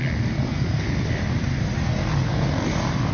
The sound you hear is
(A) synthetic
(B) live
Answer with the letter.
B